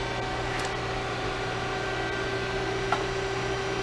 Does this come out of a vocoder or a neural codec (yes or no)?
no